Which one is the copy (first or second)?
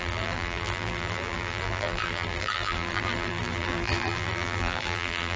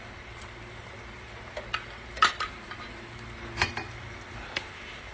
first